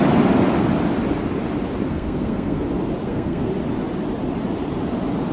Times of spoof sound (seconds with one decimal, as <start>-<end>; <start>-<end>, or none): 1.9-2.6; 3.0-3.5